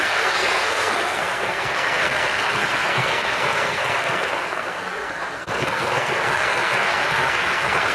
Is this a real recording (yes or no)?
no